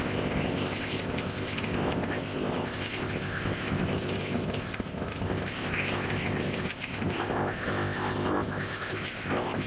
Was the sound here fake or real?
fake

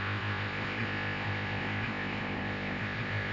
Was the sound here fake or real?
fake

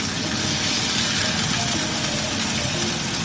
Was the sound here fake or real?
real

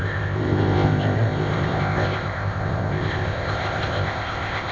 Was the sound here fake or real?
fake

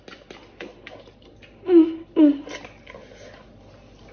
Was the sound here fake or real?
real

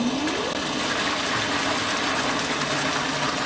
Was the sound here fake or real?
real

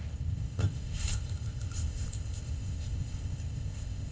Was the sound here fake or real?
fake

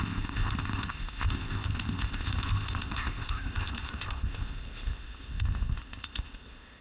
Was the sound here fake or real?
fake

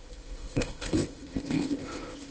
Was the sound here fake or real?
fake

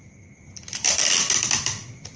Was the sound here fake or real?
real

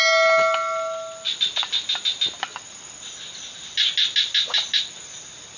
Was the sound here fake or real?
real